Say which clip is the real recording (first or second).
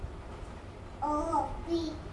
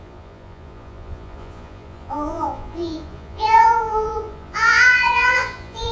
first